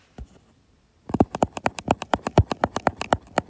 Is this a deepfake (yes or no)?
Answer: yes